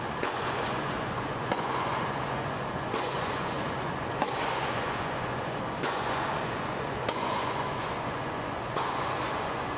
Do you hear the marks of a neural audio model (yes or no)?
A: yes